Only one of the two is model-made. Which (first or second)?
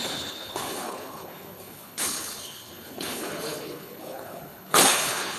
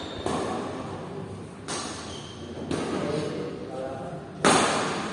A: first